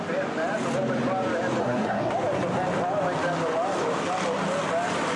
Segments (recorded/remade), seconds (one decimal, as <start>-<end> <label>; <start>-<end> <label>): 0.0-1.6 recorded; 1.6-2.1 remade; 2.1-5.2 recorded